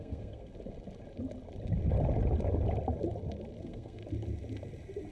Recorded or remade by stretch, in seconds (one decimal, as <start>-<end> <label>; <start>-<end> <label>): 0.0-0.5 remade; 0.5-3.6 recorded; 3.6-4.0 remade; 4.0-5.1 recorded